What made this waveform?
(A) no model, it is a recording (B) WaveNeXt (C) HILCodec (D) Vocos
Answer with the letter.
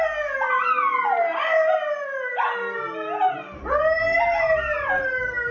A